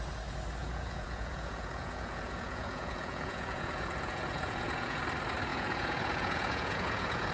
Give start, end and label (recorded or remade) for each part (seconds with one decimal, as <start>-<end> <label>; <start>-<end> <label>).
0.0-0.6 recorded; 0.6-5.0 remade; 5.0-5.5 recorded; 5.5-7.3 remade